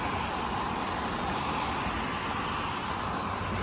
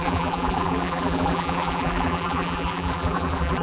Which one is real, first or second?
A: first